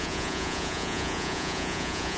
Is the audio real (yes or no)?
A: no